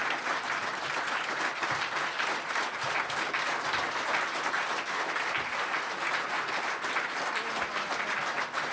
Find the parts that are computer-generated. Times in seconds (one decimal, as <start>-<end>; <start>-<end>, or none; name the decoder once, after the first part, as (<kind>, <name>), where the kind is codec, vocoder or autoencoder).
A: 0.0-2.6 (vocoder, BigVGAN v2)